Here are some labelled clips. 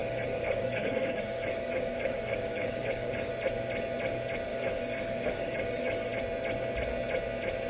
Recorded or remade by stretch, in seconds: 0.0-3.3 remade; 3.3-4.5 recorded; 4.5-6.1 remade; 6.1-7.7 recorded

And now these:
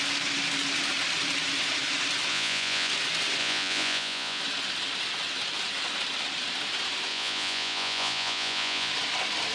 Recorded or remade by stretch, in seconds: 0.0-2.3 recorded; 2.3-2.9 remade; 2.9-3.4 recorded; 3.4-4.4 remade; 4.4-7.1 recorded; 7.1-8.9 remade; 8.9-9.5 recorded

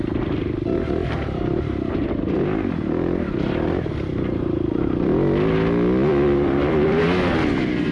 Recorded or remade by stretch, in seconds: 0.0-1.0 recorded; 1.0-2.1 remade; 2.1-6.1 recorded; 6.1-7.0 remade; 7.0-7.9 recorded

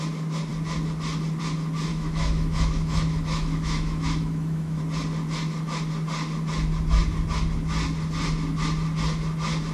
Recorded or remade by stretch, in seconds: 0.0-1.9 recorded; 1.9-4.8 remade; 4.8-9.7 recorded

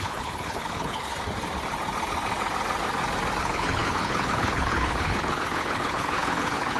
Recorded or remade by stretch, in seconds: 0.0-1.1 remade; 1.1-3.4 recorded; 3.4-6.8 remade

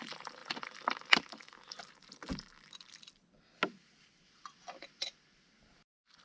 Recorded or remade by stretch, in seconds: 0.0-6.2 recorded

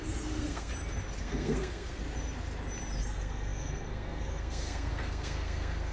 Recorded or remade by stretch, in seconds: 0.0-0.7 remade; 0.7-1.2 recorded; 1.2-2.0 remade; 2.0-3.0 recorded; 3.0-5.9 remade

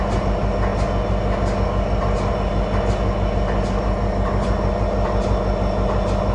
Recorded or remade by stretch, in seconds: 0.0-6.3 recorded